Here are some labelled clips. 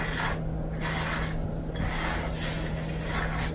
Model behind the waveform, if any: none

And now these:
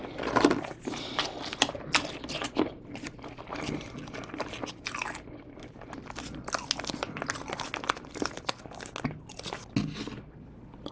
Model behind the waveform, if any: none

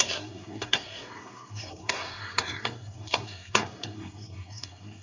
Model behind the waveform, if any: codec, SNAC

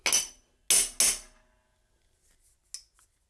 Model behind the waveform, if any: none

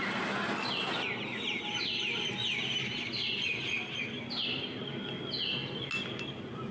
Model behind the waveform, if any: none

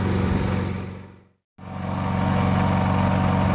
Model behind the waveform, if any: none